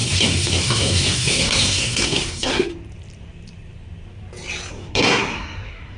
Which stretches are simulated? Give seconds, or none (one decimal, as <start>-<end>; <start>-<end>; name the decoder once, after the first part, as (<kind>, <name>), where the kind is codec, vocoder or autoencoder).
0.0-2.7 (codec, SNAC); 4.7-6.0